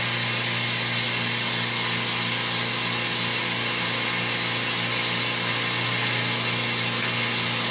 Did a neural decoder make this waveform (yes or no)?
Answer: no